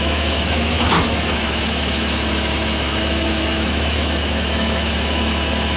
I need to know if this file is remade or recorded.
remade